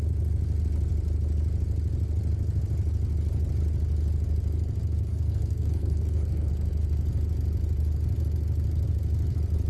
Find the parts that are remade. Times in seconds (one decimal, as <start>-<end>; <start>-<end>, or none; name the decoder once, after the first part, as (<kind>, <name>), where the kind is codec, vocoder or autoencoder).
5.1-6.5 (codec, SNAC)